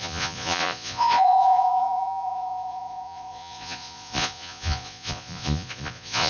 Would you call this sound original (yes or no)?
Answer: no